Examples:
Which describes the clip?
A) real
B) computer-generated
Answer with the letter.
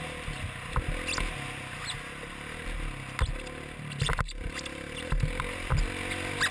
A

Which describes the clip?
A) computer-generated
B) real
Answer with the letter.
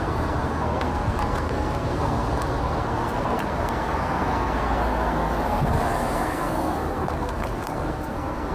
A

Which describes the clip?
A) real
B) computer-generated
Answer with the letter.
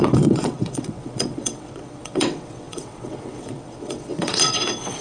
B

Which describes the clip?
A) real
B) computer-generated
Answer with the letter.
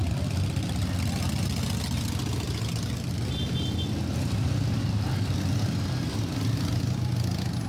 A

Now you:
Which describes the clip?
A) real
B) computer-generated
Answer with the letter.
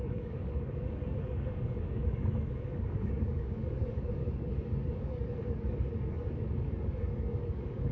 B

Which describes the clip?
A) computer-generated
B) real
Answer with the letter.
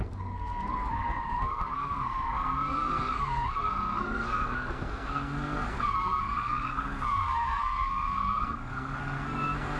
A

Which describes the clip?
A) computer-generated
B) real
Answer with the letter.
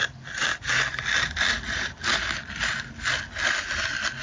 B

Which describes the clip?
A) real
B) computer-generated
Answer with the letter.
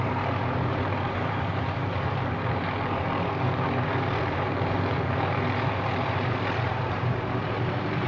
B